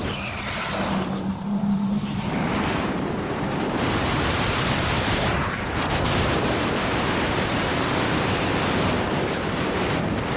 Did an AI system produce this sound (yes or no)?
yes